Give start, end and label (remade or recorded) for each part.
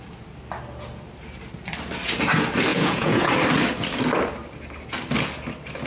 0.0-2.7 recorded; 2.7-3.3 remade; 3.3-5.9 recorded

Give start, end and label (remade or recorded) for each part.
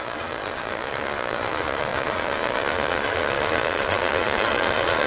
0.0-5.1 remade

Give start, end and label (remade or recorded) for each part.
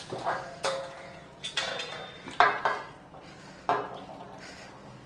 0.0-1.9 remade; 1.9-5.1 recorded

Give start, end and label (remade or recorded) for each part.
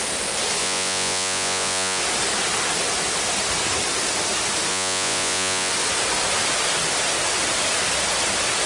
0.0-0.6 recorded; 0.6-2.0 remade; 2.0-4.7 recorded; 4.7-5.7 remade; 5.7-8.7 recorded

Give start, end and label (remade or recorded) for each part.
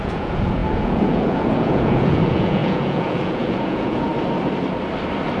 0.0-4.1 remade; 4.1-5.4 recorded